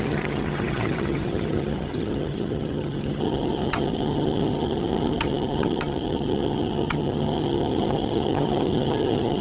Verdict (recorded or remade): remade